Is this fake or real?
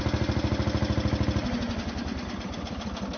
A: real